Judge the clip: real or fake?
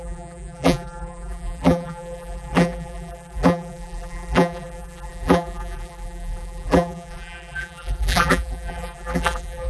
fake